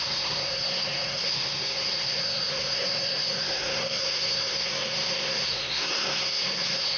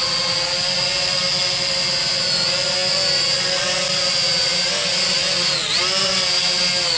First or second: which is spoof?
first